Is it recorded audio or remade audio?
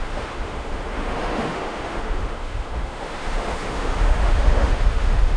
remade